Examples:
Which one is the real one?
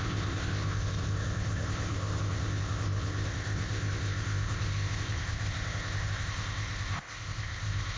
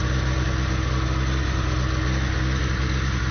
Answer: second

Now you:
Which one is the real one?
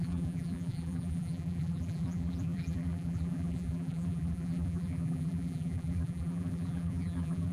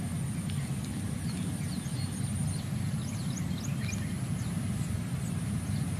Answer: second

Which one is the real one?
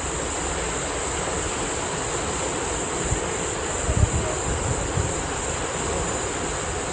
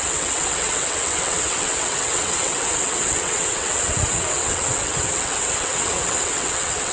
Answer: first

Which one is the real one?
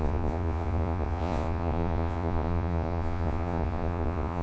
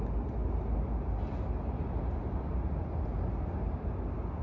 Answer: second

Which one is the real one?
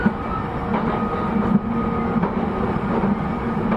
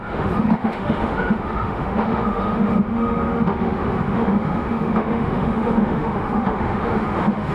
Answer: first